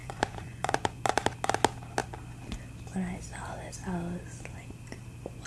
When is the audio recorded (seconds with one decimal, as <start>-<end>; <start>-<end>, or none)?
1.0-5.5